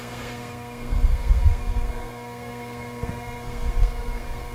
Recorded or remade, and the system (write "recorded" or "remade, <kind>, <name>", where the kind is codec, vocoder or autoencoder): remade, codec, SNAC